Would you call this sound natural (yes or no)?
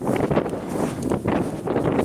yes